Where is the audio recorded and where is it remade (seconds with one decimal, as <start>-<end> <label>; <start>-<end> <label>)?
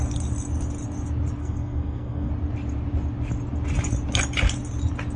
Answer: 0.0-1.4 recorded; 1.4-2.3 remade; 2.3-5.2 recorded